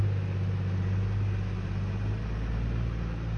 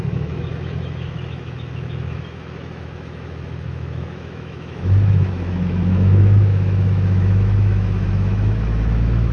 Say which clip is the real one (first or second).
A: first